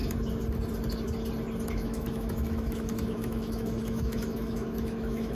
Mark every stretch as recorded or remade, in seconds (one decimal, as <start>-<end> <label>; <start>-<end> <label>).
0.0-1.7 recorded; 1.7-5.3 remade